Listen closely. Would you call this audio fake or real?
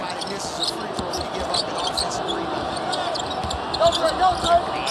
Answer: real